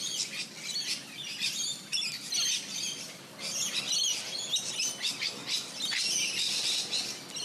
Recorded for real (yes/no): yes